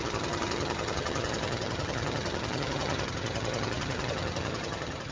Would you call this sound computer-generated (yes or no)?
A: yes